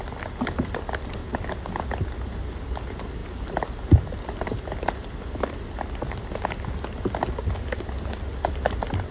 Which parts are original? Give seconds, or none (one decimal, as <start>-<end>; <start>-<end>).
0.0-9.1